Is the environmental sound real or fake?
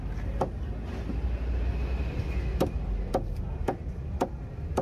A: real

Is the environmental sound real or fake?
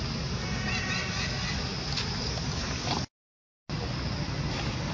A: real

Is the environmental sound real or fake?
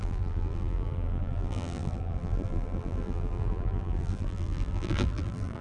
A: fake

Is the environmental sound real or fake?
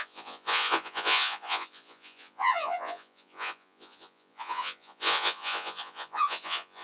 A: fake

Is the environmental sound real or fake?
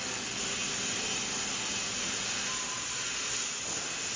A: real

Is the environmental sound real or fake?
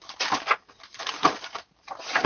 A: real